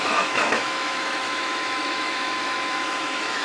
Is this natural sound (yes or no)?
no